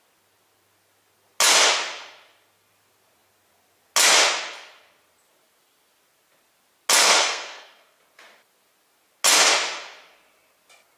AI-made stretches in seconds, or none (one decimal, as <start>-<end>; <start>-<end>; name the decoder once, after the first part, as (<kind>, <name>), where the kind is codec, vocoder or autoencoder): 7.0-8.0 (codec, SNAC)